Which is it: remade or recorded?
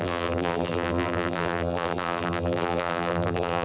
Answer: remade